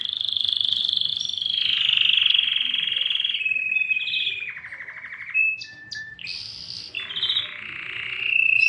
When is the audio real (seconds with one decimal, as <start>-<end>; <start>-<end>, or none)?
0.0-8.7